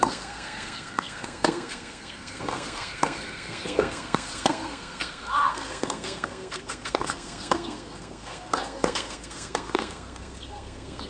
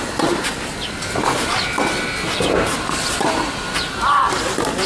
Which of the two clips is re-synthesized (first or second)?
first